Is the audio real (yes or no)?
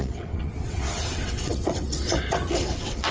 no